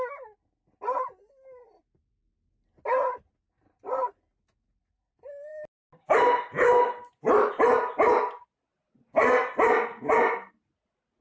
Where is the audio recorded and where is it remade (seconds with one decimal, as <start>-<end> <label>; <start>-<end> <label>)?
0.0-11.2 recorded